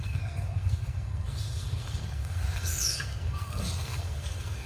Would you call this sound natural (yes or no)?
no